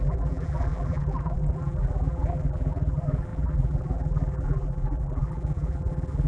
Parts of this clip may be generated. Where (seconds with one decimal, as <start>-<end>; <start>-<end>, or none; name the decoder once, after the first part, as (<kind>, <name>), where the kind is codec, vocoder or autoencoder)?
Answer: 0.0-6.3 (vocoder, BigVGAN v2)